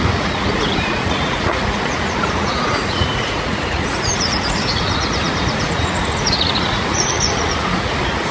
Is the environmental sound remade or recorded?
remade